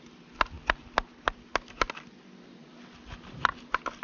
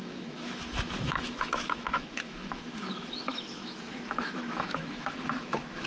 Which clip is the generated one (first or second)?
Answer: second